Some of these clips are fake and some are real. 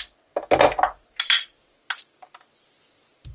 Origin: real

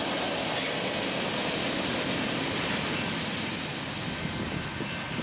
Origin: real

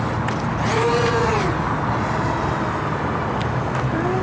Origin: real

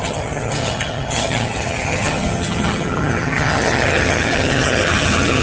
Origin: fake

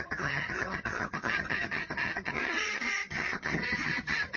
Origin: fake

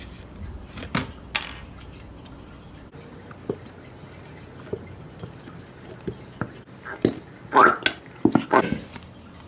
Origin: real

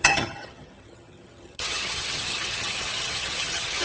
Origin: fake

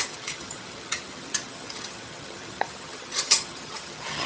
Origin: fake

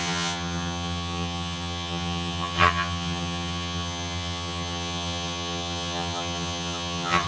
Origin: fake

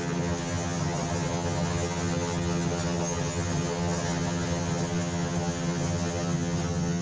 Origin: fake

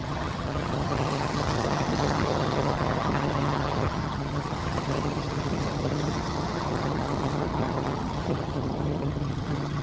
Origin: fake